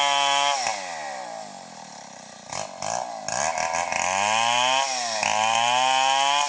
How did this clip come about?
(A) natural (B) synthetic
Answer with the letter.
A